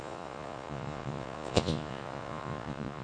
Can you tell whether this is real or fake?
fake